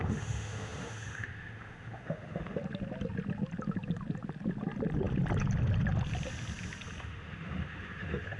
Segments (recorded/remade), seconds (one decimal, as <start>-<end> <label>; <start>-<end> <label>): 0.0-2.6 remade; 2.6-7.0 recorded; 7.0-8.4 remade